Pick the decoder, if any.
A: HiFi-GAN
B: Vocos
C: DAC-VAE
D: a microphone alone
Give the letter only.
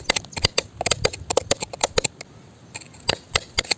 D